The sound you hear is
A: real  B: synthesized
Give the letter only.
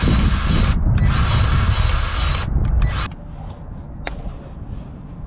A